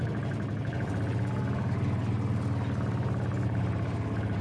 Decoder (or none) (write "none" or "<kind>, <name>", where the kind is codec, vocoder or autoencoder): none